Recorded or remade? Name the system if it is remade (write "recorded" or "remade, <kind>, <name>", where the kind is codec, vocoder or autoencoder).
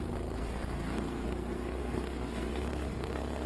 remade, codec, SNAC